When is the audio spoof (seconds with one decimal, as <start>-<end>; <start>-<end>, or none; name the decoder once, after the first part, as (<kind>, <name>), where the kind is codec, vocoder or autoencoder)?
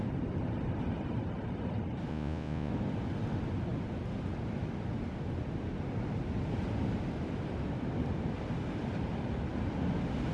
2.1-2.7 (vocoder, Vocos)